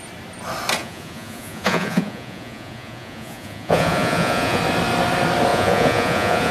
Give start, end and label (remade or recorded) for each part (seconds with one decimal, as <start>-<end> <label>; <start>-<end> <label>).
0.0-0.8 recorded; 0.8-4.6 remade; 4.6-5.5 recorded; 5.5-6.5 remade